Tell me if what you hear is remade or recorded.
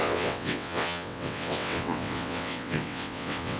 remade